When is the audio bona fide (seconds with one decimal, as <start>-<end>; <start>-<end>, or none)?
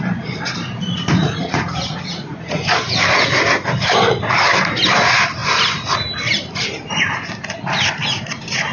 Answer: 0.0-1.2; 2.6-8.7